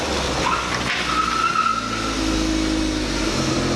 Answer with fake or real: real